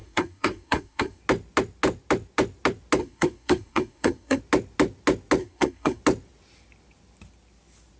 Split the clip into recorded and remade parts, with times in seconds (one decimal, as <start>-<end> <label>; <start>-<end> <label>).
0.0-1.2 remade; 1.2-3.0 recorded; 3.0-4.4 remade; 4.4-5.4 recorded; 5.4-6.0 remade; 6.0-8.0 recorded